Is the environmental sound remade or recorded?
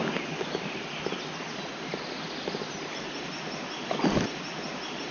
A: recorded